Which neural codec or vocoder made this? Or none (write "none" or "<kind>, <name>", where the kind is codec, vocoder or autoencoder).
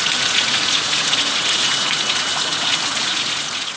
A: vocoder, Vocos